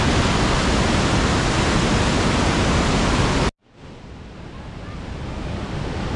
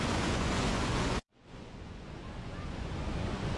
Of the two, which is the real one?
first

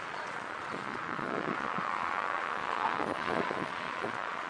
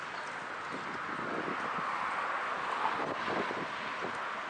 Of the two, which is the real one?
second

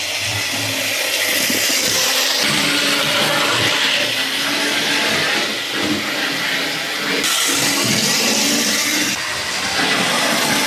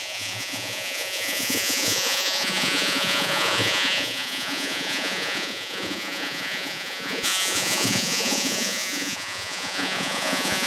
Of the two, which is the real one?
first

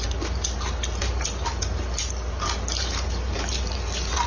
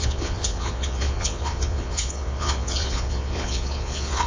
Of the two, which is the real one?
first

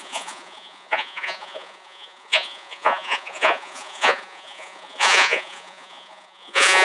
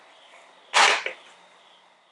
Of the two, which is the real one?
second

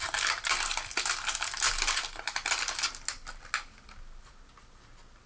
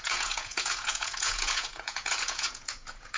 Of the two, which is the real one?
first